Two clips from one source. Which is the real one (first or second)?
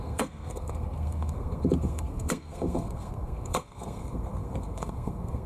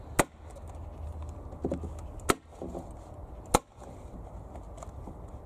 second